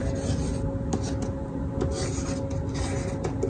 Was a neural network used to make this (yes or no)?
no